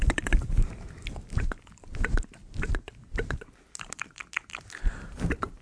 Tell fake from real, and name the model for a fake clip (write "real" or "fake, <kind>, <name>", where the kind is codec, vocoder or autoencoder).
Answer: real